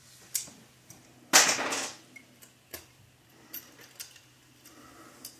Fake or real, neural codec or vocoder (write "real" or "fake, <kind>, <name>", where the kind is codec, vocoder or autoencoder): real